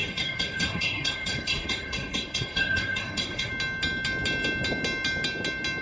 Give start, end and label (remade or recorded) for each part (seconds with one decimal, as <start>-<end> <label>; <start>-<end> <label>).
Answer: 0.0-3.5 remade; 3.5-5.8 recorded